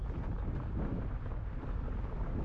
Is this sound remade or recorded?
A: recorded